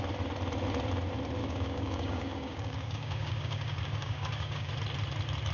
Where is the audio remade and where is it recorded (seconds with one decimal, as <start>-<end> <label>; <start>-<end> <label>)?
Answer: 0.0-1.4 recorded; 1.4-4.7 remade; 4.7-5.5 recorded